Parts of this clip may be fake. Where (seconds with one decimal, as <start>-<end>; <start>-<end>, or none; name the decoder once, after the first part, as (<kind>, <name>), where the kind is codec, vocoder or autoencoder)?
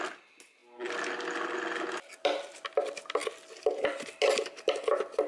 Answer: none